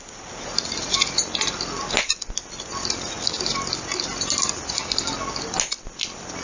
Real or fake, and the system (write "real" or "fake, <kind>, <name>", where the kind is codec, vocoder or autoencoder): real